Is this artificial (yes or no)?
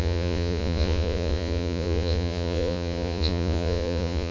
yes